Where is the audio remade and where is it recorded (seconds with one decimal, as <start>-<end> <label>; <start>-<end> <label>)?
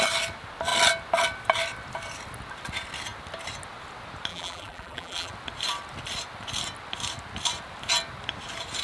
0.0-4.3 recorded; 4.3-5.3 remade; 5.3-8.8 recorded